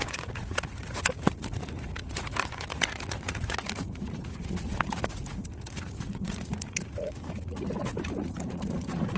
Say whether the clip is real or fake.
fake